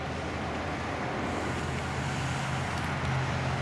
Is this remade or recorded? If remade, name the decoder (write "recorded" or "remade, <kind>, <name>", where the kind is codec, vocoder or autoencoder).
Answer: recorded